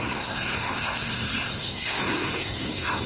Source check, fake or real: fake